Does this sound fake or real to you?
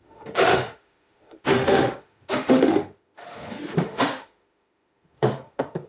fake